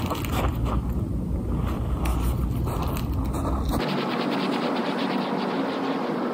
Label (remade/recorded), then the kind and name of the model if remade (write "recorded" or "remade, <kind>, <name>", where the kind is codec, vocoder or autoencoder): recorded